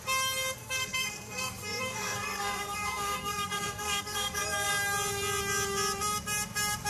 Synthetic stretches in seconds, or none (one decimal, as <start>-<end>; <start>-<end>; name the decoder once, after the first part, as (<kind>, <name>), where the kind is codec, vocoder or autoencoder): 0.6-4.7 (codec, SNAC)